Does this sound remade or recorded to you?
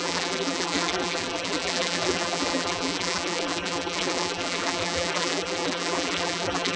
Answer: remade